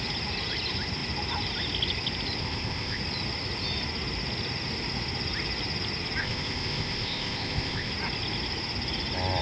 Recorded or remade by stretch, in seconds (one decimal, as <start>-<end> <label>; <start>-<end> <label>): 0.0-2.4 recorded; 2.4-3.0 remade; 3.0-6.2 recorded; 6.2-7.9 remade; 7.9-9.4 recorded

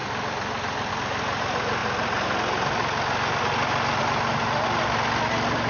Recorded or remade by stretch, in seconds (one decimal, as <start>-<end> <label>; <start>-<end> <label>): 0.0-5.7 recorded

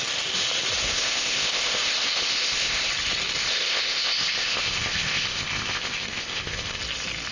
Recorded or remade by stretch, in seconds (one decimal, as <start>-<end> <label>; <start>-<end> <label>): 0.0-0.8 recorded; 0.8-2.9 remade; 2.9-3.4 recorded; 3.4-6.8 remade; 6.8-7.3 recorded

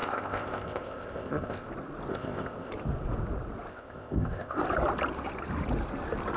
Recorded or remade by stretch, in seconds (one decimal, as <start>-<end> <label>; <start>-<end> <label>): 0.0-1.7 remade; 1.7-2.1 recorded; 2.1-2.7 remade; 2.7-3.7 recorded; 3.7-4.6 remade; 4.6-6.4 recorded

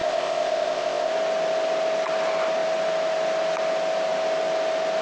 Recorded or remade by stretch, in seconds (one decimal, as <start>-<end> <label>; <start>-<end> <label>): 0.0-1.1 remade; 1.1-5.0 recorded